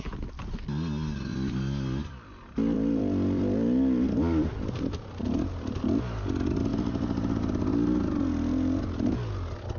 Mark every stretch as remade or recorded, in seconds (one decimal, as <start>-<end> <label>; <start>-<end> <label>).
0.0-1.3 recorded; 1.3-5.4 remade; 5.4-6.7 recorded; 6.7-7.6 remade; 7.6-9.8 recorded